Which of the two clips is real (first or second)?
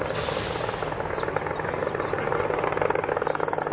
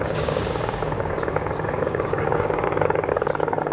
first